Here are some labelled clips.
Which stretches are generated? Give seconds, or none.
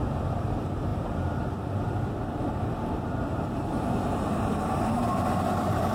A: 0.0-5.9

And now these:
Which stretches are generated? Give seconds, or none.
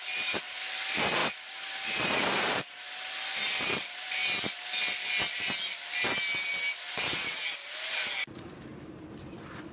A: 0.0-4.2; 7.9-8.7; 9.2-9.7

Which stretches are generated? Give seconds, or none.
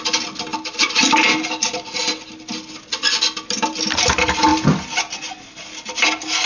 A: none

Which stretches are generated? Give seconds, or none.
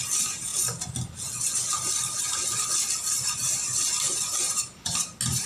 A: none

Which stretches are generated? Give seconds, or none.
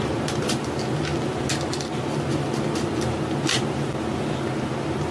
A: none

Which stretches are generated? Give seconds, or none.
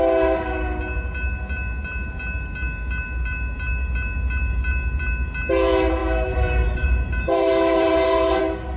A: 6.0-8.4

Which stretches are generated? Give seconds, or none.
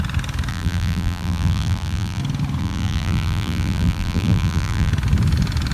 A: 0.5-2.2; 2.6-4.9